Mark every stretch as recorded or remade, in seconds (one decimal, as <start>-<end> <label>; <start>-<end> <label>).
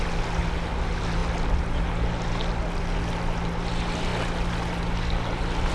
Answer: 0.0-5.7 recorded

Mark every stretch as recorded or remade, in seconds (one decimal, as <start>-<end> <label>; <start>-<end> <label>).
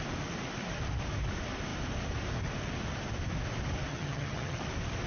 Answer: 0.0-3.9 recorded; 3.9-4.6 remade; 4.6-5.1 recorded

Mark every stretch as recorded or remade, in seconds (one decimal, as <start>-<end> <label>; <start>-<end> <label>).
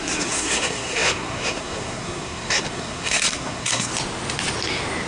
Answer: 0.0-3.9 remade; 3.9-5.1 recorded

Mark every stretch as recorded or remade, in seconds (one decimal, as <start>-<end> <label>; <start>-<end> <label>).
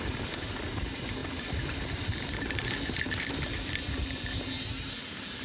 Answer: 0.0-1.2 recorded; 1.2-4.4 remade; 4.4-5.4 recorded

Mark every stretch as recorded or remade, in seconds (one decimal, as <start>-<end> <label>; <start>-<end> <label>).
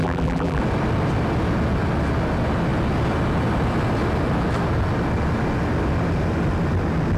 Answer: 0.0-0.6 remade; 0.6-7.2 recorded